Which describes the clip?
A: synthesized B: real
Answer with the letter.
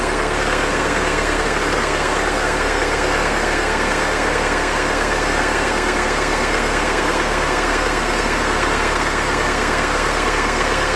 A